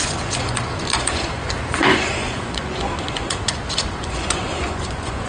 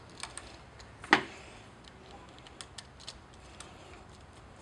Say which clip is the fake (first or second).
first